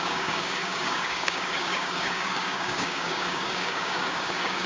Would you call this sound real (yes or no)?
no